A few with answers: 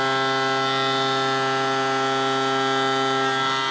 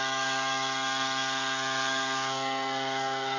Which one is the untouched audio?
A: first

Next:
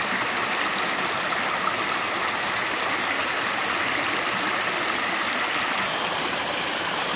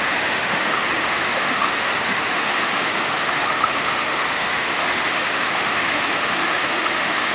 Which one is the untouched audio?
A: first